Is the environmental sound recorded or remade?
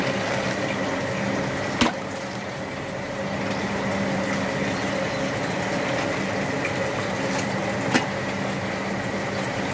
recorded